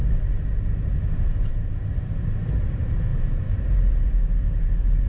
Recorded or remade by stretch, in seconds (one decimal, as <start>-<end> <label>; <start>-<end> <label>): 0.0-1.5 recorded; 1.5-5.1 remade